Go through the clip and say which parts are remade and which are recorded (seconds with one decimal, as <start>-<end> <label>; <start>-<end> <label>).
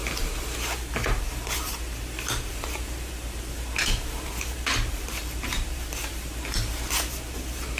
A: 0.0-0.9 recorded; 0.9-7.8 remade